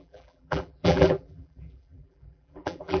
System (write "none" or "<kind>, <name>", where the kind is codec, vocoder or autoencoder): vocoder, BigVGAN v2